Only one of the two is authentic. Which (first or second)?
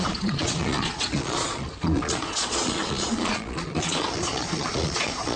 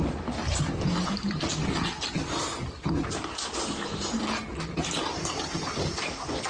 second